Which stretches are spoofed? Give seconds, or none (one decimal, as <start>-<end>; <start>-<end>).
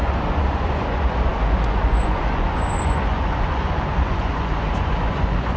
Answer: 0.0-5.6